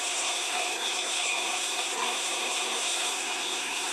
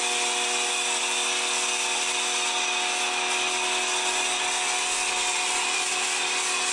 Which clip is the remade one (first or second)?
first